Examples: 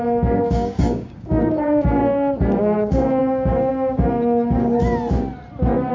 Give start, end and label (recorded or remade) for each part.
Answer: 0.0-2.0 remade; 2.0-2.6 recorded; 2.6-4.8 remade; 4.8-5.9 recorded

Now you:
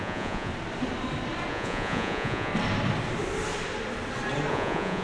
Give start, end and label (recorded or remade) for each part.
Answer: 0.0-0.5 remade; 0.5-1.5 recorded; 1.5-2.5 remade; 2.5-4.5 recorded; 4.5-5.0 remade

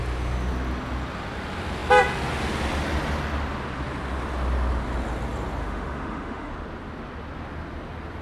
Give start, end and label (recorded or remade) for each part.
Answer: 0.0-5.6 recorded; 5.6-6.5 remade; 6.5-8.2 recorded

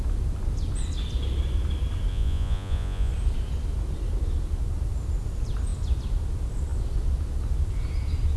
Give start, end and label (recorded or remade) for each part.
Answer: 0.0-2.1 recorded; 2.1-3.1 remade; 3.1-8.4 recorded

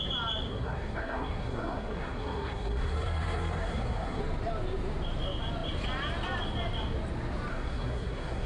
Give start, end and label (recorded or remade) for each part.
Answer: 0.0-0.5 recorded; 0.5-4.2 remade; 4.2-7.5 recorded; 7.5-8.5 remade

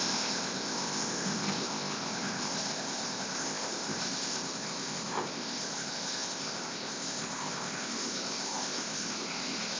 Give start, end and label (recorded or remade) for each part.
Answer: 0.0-9.8 remade

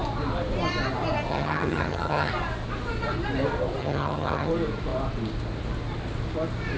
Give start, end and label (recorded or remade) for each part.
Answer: 0.0-1.3 recorded; 1.3-2.3 remade; 2.3-3.8 recorded; 3.8-4.5 remade; 4.5-6.8 recorded